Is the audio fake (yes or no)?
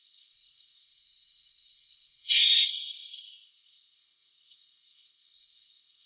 yes